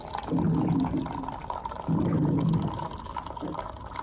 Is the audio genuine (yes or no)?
yes